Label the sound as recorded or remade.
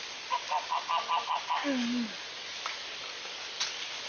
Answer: recorded